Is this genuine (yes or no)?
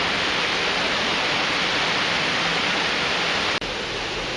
yes